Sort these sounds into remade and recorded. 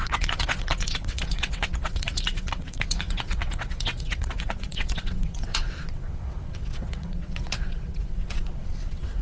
remade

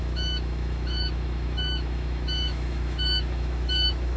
remade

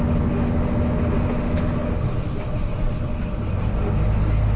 recorded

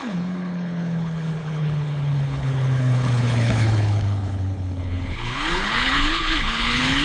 remade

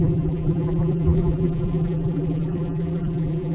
remade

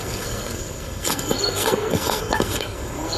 remade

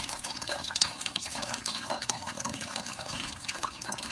remade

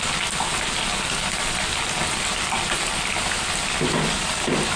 recorded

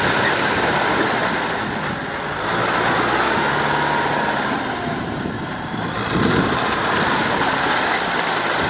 recorded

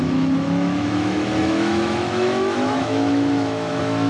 remade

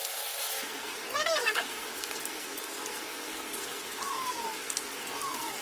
remade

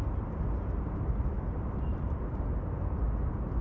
recorded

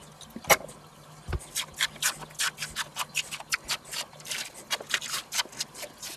recorded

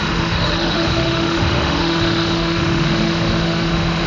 remade